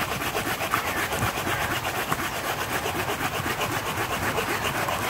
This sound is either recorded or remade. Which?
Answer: recorded